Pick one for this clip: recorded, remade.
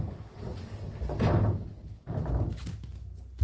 recorded